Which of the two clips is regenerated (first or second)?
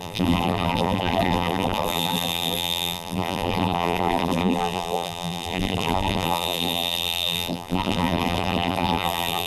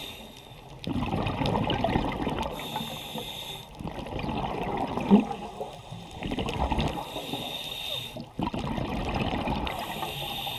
first